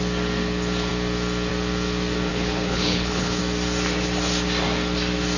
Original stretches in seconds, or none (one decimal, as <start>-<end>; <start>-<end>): 0.0-2.3; 3.4-5.4